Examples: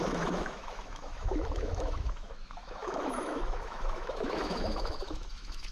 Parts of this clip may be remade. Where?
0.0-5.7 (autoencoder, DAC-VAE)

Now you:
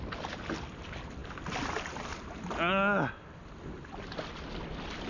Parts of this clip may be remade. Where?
none

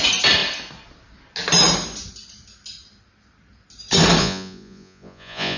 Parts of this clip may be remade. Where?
4.2-5.6 (vocoder, Vocos)

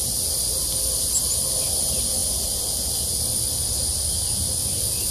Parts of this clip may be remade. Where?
none

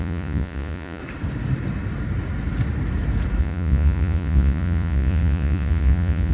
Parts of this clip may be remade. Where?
0.0-1.0 (vocoder, Vocos); 3.4-6.3

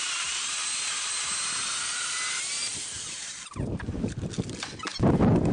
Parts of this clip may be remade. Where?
2.7-3.7 (vocoder, BigVGAN v2)

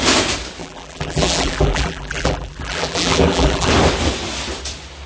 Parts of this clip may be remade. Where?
0.6-3.7 (vocoder, BigVGAN v2)